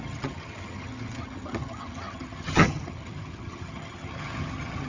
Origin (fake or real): fake